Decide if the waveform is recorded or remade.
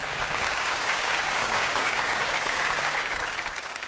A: remade